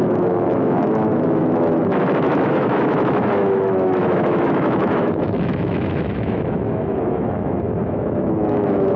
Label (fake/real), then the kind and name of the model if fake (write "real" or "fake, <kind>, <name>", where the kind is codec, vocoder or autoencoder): fake, autoencoder, DAC-VAE